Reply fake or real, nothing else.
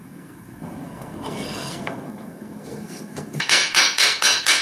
fake